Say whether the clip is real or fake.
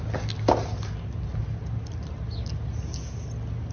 real